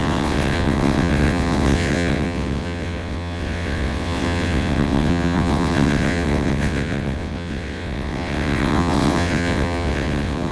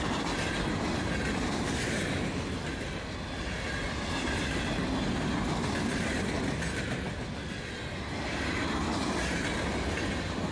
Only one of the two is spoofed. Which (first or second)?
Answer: first